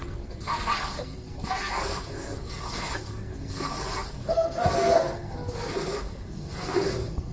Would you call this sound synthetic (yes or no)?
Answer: yes